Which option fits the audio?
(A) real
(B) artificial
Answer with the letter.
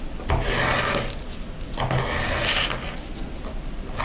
A